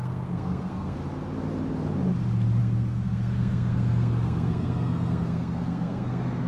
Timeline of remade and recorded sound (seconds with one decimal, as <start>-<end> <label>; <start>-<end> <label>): 0.0-1.0 remade; 1.0-2.6 recorded; 2.6-6.5 remade